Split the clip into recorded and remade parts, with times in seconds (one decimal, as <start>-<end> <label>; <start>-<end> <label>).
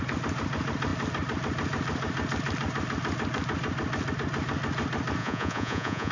0.0-5.2 recorded; 5.2-6.1 remade